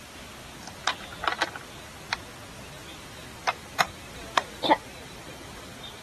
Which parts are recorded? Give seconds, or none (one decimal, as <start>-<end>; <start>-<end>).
1.1-2.9; 4.1-4.7